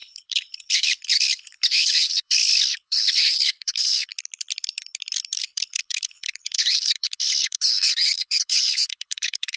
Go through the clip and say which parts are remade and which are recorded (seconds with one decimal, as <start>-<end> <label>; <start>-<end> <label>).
0.0-4.1 remade; 4.1-5.4 recorded; 5.4-9.6 remade